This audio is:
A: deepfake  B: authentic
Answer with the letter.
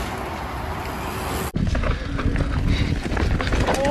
B